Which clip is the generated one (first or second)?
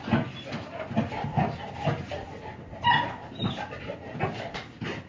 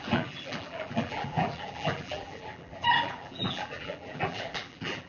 second